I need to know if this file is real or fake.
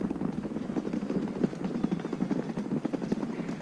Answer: real